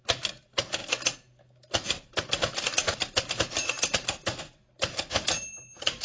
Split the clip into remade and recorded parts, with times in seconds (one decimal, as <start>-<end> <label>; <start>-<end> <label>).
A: 0.0-6.0 recorded